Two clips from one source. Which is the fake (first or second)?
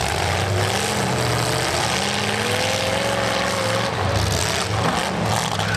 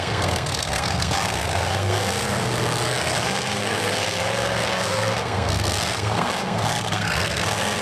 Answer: second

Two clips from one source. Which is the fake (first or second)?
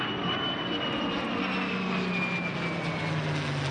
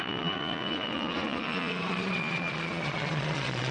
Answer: second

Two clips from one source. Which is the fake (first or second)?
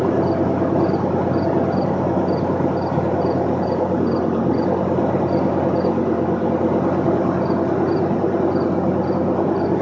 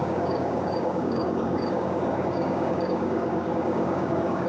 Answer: second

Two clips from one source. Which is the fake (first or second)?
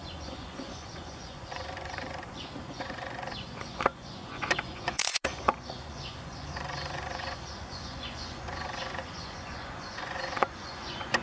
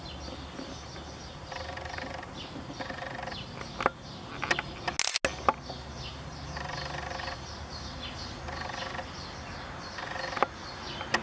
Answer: first